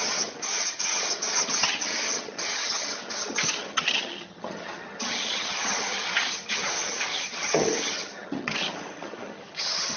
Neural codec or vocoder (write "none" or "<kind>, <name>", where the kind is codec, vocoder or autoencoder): vocoder, HiFi-GAN